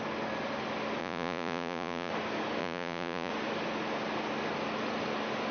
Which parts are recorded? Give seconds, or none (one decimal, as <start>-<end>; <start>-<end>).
0.0-1.0; 2.1-2.6; 3.3-5.5